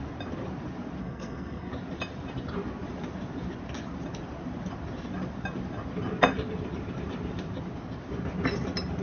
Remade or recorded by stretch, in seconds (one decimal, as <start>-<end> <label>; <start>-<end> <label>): 0.0-1.0 recorded; 1.0-1.7 remade; 1.7-9.0 recorded